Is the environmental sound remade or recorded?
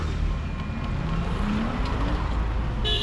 recorded